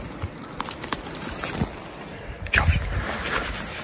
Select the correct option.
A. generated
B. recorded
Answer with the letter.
B